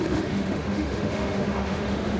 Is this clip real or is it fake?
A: fake